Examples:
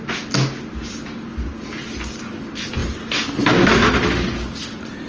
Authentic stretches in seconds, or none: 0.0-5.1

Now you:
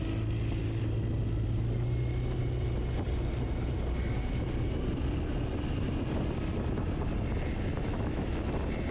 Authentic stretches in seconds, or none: 0.0-7.9; 8.4-8.9

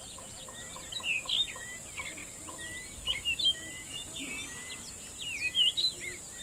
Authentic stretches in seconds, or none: 0.0-6.4

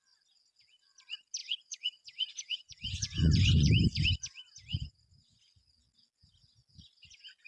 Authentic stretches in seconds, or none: 0.0-1.4; 3.7-4.7; 5.4-7.5

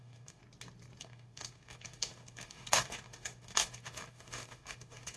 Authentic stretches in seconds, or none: 0.4-1.0

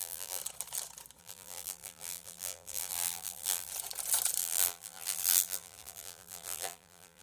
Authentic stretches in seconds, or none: 0.4-1.2; 3.7-4.4

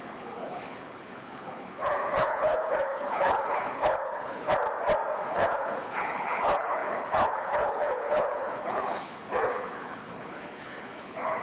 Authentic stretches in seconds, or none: 4.5-5.3

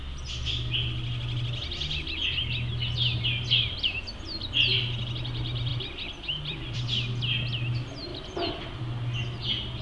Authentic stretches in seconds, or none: 0.0-5.7; 6.8-9.8